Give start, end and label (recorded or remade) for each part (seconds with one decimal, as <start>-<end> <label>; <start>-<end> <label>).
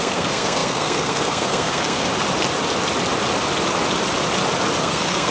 0.0-2.1 remade; 2.1-4.8 recorded; 4.8-5.3 remade